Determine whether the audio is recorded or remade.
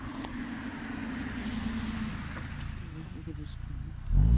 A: recorded